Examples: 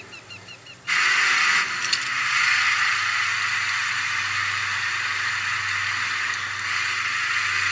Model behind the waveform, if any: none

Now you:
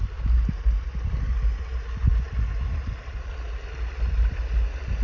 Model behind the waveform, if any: none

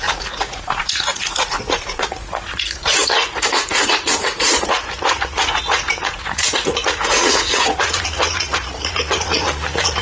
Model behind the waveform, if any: vocoder, Vocos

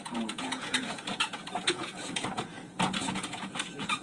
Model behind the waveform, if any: vocoder, Vocos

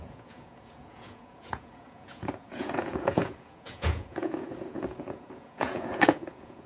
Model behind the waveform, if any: vocoder, Vocos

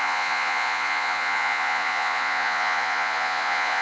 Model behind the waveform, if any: vocoder, Vocos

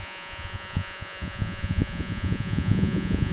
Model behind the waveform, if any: vocoder, Vocos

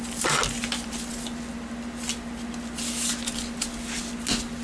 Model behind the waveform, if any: none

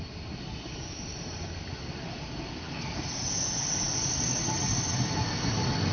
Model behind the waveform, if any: none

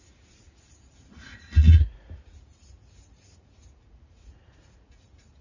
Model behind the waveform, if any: vocoder, Vocos